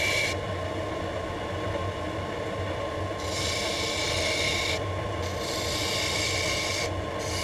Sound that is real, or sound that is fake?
real